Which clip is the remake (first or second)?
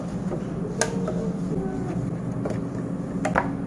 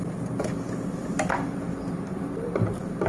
second